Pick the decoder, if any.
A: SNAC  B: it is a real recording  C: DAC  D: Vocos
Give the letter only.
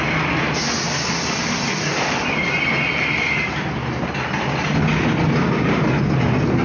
B